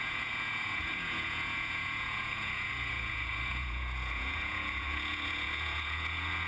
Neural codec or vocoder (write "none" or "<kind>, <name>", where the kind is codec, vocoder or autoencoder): vocoder, Vocos